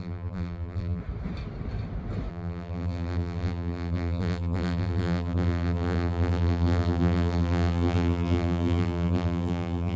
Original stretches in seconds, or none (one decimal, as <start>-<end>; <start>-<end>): 1.0-2.3